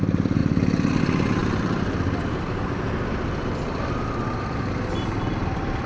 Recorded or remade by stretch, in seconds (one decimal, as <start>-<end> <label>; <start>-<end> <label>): 0.0-5.9 recorded